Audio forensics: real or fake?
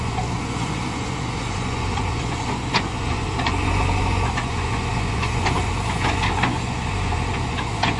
fake